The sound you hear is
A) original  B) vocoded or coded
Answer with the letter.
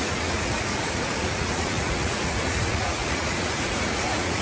B